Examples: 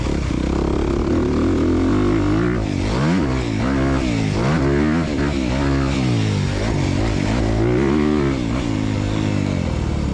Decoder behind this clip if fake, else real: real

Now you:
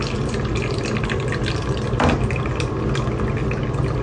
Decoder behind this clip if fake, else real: real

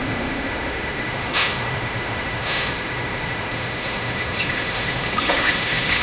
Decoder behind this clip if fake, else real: fake, autoencoder, DAC-VAE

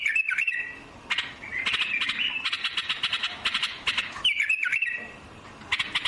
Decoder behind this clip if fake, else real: real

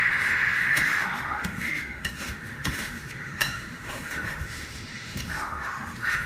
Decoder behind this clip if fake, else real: fake, autoencoder, DAC-VAE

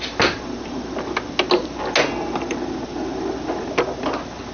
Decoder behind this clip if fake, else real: real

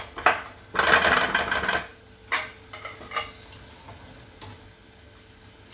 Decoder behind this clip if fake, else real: real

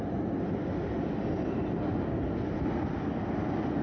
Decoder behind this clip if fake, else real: real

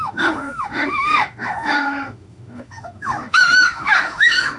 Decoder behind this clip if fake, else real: fake, autoencoder, DAC-VAE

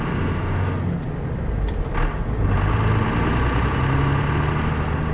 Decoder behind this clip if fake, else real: real